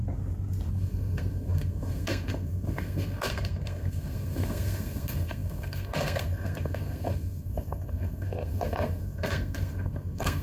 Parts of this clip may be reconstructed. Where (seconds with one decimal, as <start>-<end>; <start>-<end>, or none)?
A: 0.7-10.4